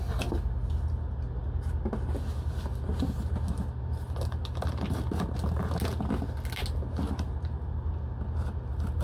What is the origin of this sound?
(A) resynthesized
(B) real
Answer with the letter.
B